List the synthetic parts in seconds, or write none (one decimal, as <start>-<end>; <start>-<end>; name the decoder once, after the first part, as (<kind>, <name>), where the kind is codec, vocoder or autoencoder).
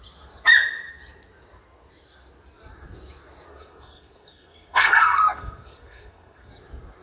3.5-6.5 (codec, SNAC)